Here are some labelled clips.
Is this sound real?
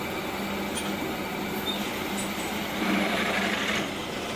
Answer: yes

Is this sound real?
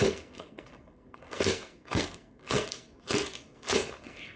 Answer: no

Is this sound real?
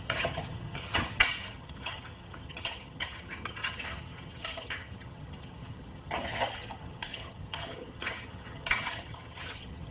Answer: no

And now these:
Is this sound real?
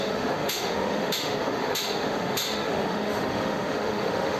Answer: no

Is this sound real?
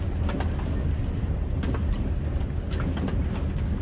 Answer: yes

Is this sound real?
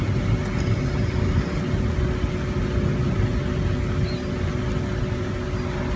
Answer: yes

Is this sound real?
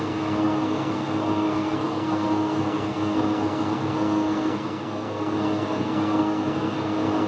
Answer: no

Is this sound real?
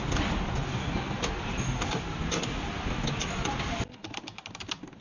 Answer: yes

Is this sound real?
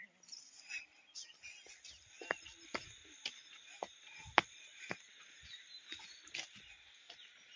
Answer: yes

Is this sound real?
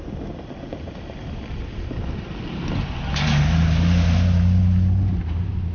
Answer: yes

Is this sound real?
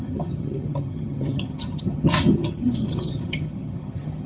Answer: no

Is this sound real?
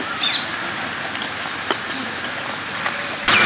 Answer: yes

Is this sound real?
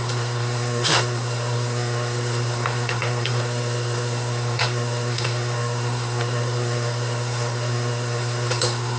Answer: no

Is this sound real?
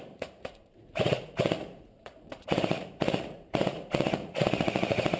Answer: no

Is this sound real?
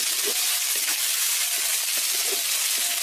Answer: yes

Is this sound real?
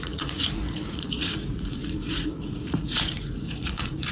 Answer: no